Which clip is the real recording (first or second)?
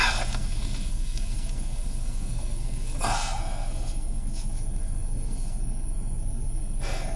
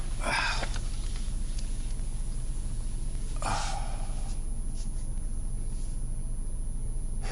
second